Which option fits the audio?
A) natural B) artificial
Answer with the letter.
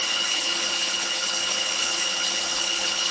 B